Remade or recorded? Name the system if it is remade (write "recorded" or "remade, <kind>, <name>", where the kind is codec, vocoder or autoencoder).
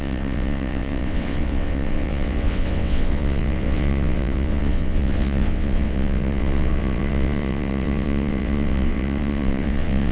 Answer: remade, vocoder, WaveNeXt